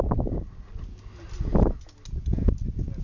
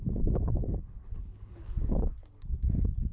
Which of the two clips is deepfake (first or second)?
second